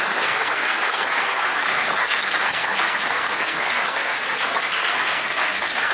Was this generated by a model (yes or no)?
yes